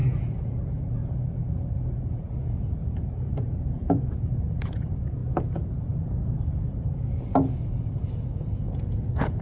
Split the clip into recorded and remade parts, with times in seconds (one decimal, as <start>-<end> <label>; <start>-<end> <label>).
0.0-9.4 remade